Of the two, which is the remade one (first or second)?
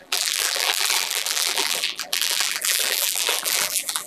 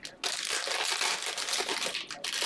first